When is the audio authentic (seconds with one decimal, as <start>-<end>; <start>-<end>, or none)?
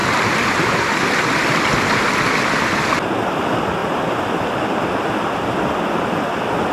1.3-3.8; 4.6-6.7